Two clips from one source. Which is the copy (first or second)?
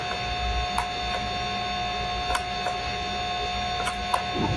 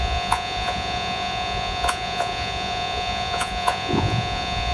second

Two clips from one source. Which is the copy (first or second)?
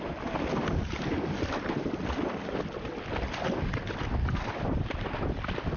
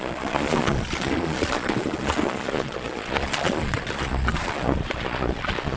second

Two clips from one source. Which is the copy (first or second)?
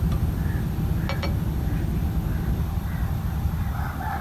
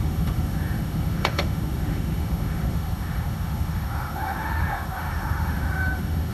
second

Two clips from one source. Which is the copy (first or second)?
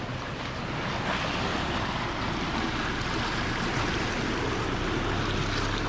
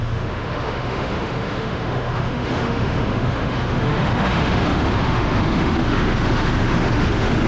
second